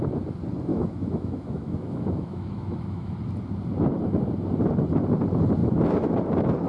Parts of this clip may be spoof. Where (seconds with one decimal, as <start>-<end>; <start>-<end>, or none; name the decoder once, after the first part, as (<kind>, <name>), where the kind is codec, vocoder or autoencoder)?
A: 0.7-3.1 (autoencoder, DAC-VAE); 5.6-6.1